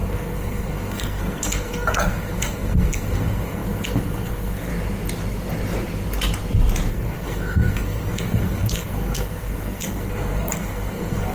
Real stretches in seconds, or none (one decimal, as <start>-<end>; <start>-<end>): 4.7-6.9